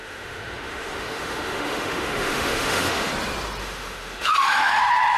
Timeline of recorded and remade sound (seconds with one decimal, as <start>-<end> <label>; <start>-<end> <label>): 0.0-3.1 remade; 3.1-3.6 recorded; 3.6-4.8 remade; 4.8-5.2 recorded